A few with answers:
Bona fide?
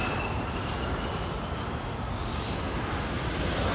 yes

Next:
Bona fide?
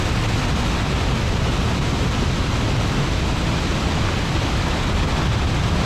yes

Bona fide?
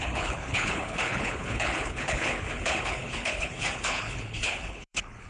no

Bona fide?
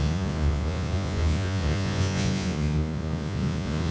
no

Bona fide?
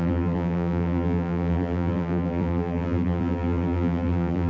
no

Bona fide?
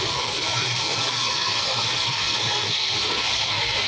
no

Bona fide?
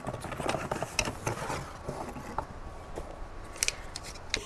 yes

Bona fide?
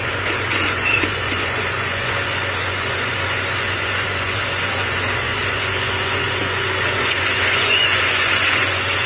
no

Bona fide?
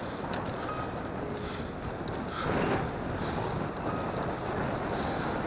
yes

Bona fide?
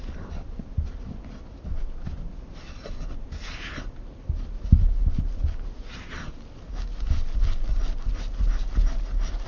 yes